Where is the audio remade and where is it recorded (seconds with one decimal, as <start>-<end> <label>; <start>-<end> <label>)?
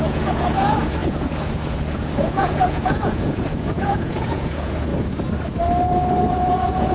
0.0-4.9 remade; 4.9-6.3 recorded; 6.3-6.9 remade